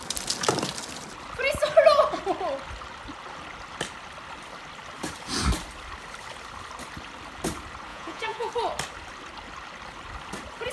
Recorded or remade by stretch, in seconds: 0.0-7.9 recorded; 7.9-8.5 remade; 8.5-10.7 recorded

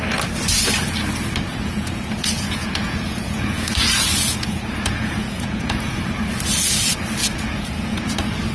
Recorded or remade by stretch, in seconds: 0.0-1.5 recorded; 1.5-6.1 remade; 6.1-7.2 recorded; 7.2-8.1 remade; 8.1-8.5 recorded

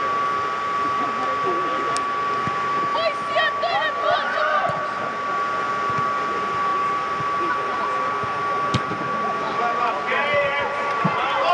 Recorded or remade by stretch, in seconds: 0.0-11.5 recorded